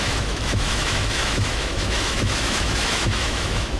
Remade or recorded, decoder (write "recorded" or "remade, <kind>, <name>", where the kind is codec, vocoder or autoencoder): remade, autoencoder, DAC-VAE